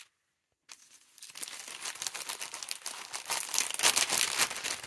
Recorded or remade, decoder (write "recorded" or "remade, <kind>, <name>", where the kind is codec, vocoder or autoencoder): recorded